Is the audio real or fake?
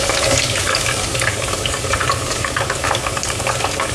fake